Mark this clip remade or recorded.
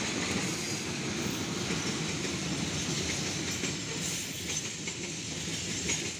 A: recorded